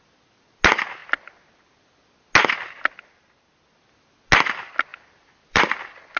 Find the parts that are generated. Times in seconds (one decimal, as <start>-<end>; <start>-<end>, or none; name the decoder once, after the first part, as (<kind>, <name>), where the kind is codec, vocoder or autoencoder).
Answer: 4.9-5.7 (vocoder, BigVGAN v2)